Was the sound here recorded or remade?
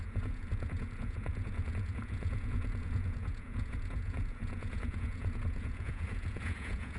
remade